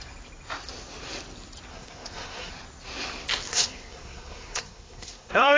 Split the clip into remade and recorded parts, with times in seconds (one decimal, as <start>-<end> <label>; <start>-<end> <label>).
0.0-1.7 recorded; 1.7-2.5 remade; 2.5-3.5 recorded; 3.5-5.6 remade